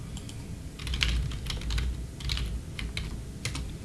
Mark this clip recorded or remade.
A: recorded